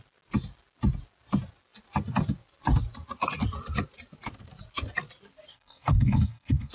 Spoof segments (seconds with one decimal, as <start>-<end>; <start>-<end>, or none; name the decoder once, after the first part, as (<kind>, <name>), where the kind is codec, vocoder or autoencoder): 5.5-6.7 (codec, SNAC)